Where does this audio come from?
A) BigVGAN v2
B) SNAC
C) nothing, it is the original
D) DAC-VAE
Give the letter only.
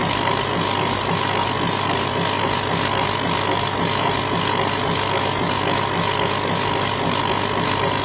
C